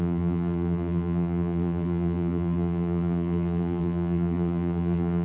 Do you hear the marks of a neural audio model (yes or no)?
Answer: yes